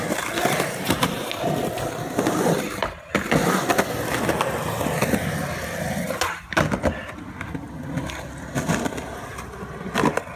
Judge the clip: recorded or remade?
recorded